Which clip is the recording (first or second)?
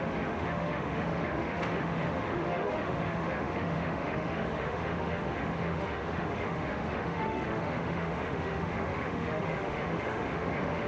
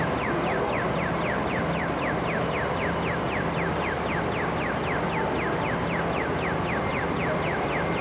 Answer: second